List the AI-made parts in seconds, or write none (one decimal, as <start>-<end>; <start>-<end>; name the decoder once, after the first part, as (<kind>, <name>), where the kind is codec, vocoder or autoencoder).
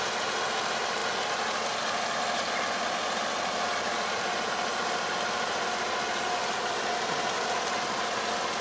none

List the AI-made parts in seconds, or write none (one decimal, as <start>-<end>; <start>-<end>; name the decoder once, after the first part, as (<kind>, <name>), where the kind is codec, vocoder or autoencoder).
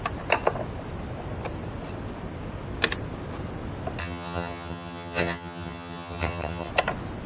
4.0-6.7 (vocoder, HiFi-GAN)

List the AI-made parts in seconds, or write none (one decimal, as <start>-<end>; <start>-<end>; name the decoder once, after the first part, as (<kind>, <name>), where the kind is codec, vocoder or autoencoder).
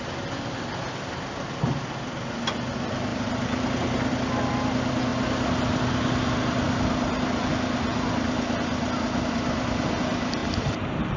none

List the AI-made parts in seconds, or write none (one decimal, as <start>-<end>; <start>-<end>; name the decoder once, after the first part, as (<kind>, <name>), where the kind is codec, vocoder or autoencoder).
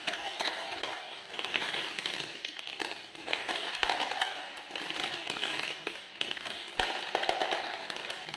0.0-4.5 (codec, DAC); 5.1-6.7; 7.6-8.4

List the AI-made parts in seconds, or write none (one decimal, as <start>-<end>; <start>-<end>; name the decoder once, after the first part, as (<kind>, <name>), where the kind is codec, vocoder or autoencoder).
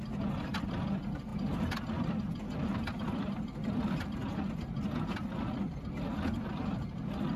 none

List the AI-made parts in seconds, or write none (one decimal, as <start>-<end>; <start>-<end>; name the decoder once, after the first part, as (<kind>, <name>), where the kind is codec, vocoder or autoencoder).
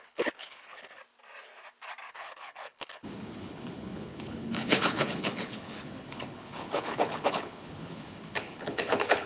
0.0-1.0 (codec, HILCodec); 2.1-9.3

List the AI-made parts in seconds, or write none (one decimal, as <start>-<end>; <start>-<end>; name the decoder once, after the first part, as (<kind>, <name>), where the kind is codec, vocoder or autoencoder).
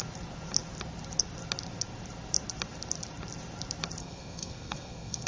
4.0-5.3 (codec, SNAC)